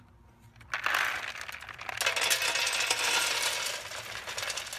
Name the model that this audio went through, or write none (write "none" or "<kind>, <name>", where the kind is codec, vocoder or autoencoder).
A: none